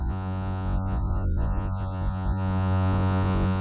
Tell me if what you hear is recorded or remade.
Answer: remade